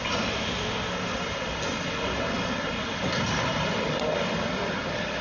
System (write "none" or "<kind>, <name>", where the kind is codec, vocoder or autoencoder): none